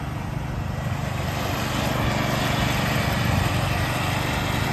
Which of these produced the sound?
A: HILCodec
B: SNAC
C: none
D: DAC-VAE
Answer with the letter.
C